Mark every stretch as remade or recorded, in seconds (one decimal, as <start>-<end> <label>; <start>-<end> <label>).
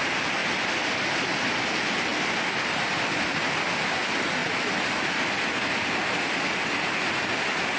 0.0-7.8 recorded